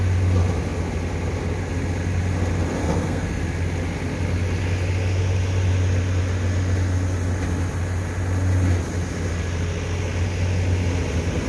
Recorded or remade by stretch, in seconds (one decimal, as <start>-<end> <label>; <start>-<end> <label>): 0.0-2.8 recorded; 2.8-3.4 remade; 3.4-11.5 recorded